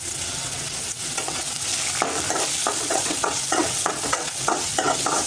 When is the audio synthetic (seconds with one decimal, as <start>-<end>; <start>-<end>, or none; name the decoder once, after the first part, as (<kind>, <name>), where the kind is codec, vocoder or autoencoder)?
0.0-1.7 (vocoder, WaveNeXt); 2.8-5.3